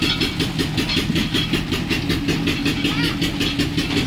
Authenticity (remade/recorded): recorded